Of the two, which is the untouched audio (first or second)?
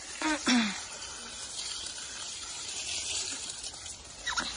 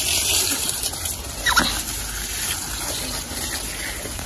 second